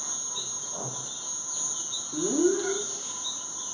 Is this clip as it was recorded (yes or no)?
yes